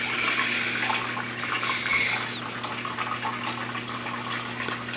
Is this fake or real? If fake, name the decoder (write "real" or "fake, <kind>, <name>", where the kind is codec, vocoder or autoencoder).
real